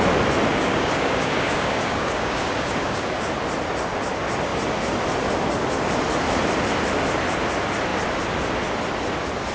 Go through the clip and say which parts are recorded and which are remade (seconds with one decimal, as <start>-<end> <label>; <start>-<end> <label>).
0.0-0.5 recorded; 0.5-3.3 remade; 3.3-9.5 recorded